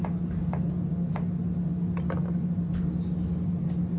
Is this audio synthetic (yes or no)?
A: no